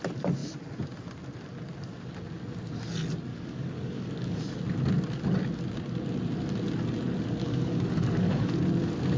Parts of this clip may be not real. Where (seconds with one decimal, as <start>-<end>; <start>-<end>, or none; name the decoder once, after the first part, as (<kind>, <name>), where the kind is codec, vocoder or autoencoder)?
3.3-4.4 (codec, DAC); 7.4-8.6